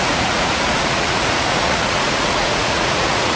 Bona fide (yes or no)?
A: no